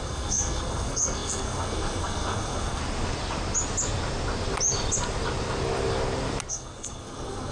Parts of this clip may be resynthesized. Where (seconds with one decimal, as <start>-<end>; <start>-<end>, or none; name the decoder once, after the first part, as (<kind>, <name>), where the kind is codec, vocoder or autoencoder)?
0.0-2.8 (codec, SNAC); 6.5-7.5